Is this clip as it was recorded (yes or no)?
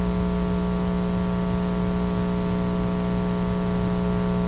yes